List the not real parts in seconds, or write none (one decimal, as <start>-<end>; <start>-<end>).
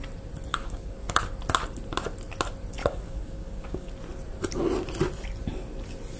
0.5-1.1; 2.8-3.9